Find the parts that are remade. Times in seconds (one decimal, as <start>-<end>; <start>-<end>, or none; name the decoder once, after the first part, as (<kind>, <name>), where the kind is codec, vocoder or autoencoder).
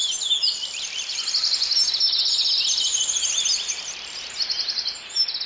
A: none